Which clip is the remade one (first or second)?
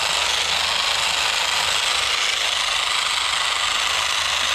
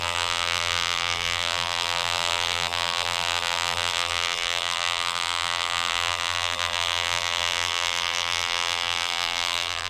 second